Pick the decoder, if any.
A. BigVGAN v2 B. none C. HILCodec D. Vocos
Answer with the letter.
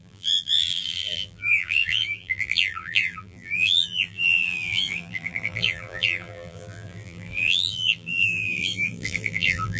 A